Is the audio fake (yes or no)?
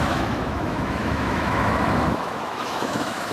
yes